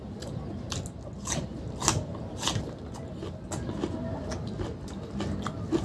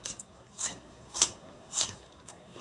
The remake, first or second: second